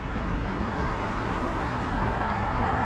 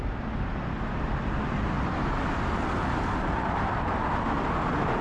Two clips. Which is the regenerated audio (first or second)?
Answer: first